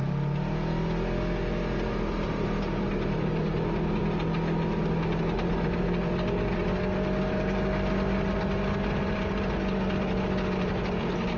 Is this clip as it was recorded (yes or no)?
yes